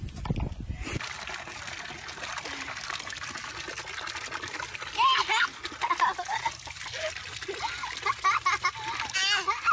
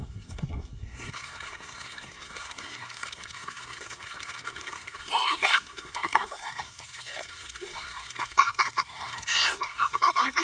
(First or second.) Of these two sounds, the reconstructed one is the second